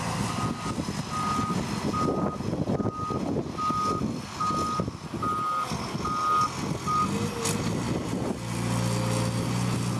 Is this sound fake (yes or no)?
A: no